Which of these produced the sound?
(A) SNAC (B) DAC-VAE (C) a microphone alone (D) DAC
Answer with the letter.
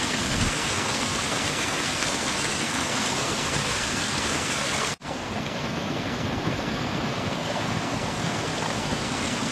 A